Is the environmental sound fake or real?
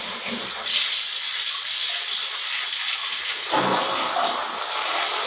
real